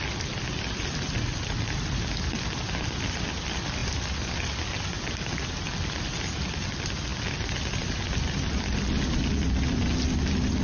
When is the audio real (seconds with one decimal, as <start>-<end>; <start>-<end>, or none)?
0.0-10.6